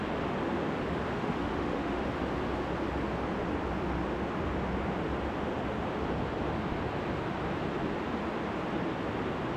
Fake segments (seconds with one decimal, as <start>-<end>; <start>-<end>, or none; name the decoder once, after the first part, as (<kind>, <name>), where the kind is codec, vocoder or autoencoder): 1.1-2.0 (autoencoder, DAC-VAE)